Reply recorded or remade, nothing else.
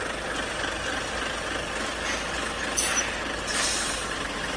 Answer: recorded